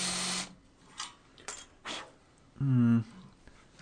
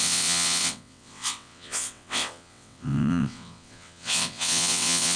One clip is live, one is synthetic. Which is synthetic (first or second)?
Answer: second